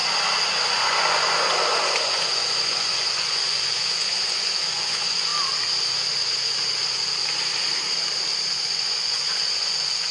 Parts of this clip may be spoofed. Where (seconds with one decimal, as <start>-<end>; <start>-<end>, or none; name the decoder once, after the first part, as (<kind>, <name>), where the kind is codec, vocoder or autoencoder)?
0.8-5.3 (vocoder, Vocos); 8.5-10.1